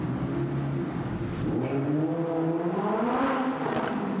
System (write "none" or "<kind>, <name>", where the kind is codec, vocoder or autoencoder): none